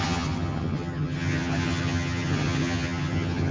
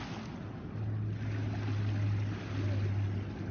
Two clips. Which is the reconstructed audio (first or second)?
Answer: first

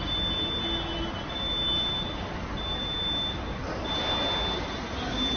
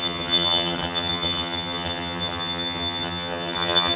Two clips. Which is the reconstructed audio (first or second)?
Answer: second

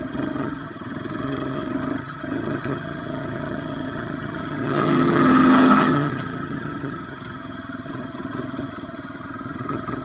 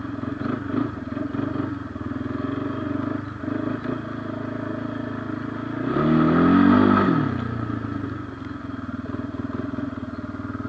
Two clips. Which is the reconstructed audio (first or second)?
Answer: first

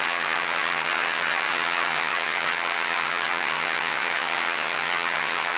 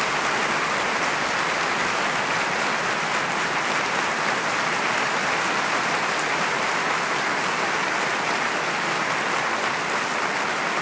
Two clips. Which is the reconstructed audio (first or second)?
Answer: first